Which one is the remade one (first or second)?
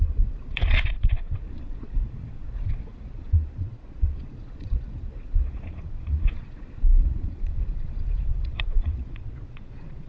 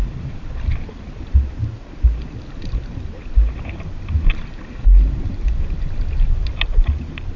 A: first